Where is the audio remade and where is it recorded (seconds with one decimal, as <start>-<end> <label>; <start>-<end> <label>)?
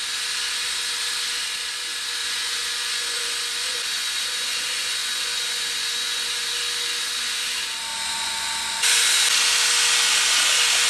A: 0.0-2.2 recorded; 2.2-6.5 remade; 6.5-7.9 recorded; 7.9-9.0 remade; 9.0-10.9 recorded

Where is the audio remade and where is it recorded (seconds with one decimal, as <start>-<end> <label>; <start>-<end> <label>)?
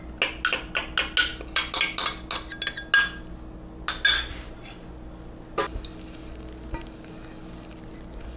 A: 0.0-8.4 recorded